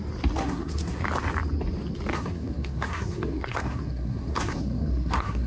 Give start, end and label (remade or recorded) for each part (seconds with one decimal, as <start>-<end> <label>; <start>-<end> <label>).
0.0-0.4 recorded; 0.4-1.0 remade; 1.0-2.1 recorded; 2.1-5.5 remade